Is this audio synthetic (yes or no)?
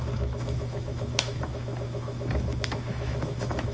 yes